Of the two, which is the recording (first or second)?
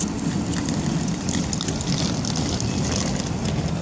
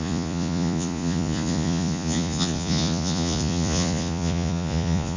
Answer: first